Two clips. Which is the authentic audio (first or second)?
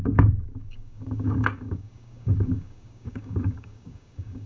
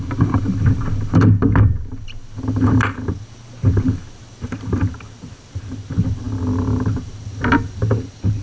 second